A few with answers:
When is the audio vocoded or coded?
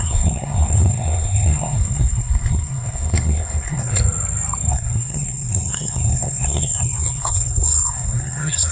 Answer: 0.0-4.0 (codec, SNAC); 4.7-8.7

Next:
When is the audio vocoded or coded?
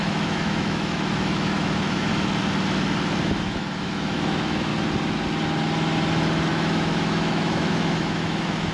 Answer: 0.0-2.1 (autoencoder, DAC-VAE); 3.2-4.7; 6.5-8.7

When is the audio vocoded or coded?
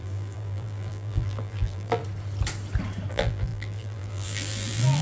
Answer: 0.0-2.0 (vocoder, BigVGAN v2); 3.1-5.0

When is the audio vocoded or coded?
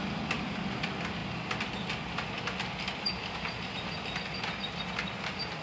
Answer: none